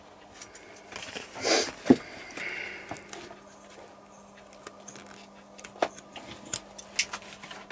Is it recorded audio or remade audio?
recorded